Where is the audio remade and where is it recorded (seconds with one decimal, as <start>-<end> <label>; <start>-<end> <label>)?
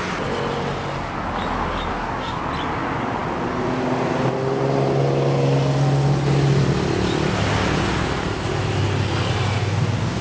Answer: 0.0-1.9 recorded; 1.9-2.4 remade; 2.4-9.6 recorded; 9.6-10.2 remade